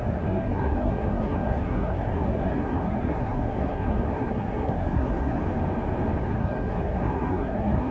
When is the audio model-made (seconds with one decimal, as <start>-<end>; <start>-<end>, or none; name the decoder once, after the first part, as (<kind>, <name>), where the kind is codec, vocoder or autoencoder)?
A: 0.0-5.4 (codec, SNAC); 6.2-7.9